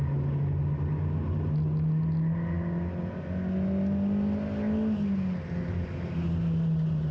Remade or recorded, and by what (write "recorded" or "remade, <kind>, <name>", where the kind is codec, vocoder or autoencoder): recorded